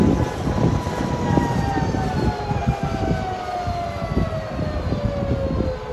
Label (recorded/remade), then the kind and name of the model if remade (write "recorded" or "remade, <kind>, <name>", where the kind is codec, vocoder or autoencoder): recorded